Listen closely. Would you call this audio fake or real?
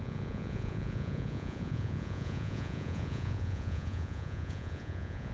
fake